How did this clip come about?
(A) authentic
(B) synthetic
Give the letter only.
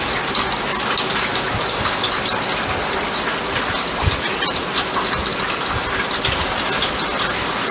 A